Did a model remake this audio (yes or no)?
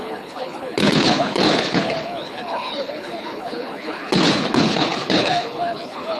yes